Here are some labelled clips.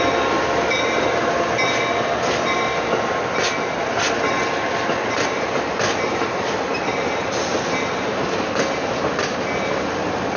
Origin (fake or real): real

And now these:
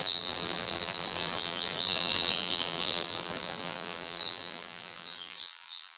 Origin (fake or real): fake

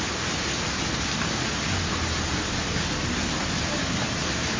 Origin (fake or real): real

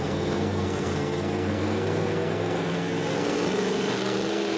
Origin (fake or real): fake